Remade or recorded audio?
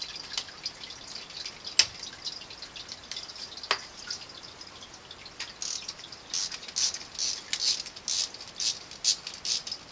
recorded